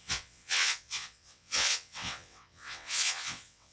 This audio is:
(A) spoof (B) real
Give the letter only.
A